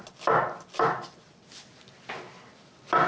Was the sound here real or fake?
real